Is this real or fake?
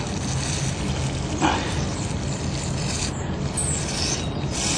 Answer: real